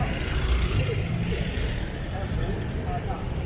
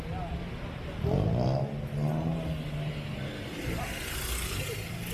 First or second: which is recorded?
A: second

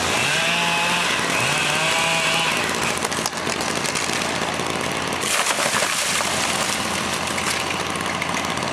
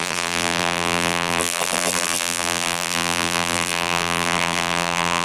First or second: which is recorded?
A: first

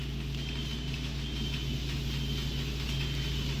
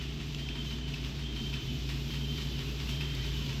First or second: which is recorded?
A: first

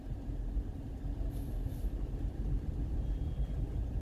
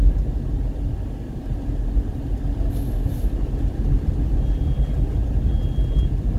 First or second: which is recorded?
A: second